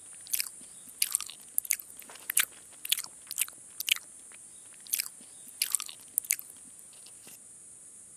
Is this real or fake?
real